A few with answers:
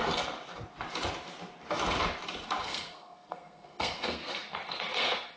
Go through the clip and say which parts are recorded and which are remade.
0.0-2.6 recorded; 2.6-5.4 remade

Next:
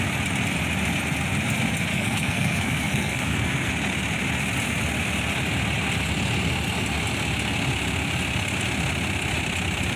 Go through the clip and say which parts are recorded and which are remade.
0.0-1.9 recorded; 1.9-3.7 remade; 3.7-10.0 recorded

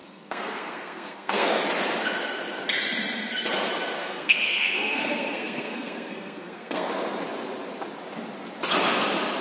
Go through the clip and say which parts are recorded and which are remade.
0.0-1.6 remade; 1.6-4.0 recorded; 4.0-6.9 remade; 6.9-9.4 recorded